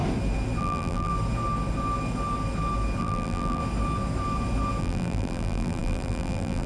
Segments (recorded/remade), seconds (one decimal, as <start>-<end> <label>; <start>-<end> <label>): 0.0-0.6 recorded; 0.6-1.1 remade; 1.1-3.0 recorded; 3.0-3.6 remade; 3.6-4.8 recorded; 4.8-6.7 remade

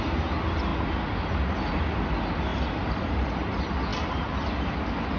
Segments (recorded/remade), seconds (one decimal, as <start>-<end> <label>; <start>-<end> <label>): 0.0-2.5 recorded; 2.5-3.0 remade; 3.0-5.2 recorded

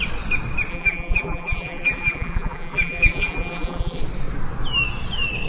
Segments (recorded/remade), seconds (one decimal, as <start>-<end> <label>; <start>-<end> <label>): 0.0-0.7 recorded; 0.7-4.0 remade; 4.0-5.5 recorded

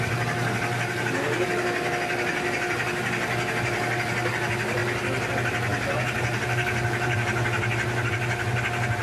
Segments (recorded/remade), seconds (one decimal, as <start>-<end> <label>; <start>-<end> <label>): 0.0-5.7 recorded; 5.7-8.1 remade; 8.1-9.0 recorded

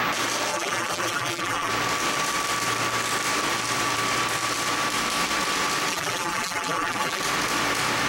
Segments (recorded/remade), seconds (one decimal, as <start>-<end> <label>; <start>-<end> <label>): 0.0-0.5 recorded; 0.5-1.7 remade; 1.7-5.9 recorded; 5.9-7.2 remade; 7.2-8.1 recorded

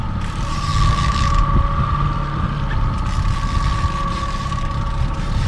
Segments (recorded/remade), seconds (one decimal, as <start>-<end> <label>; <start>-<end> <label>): 0.0-0.7 remade; 0.7-4.0 recorded; 4.0-5.5 remade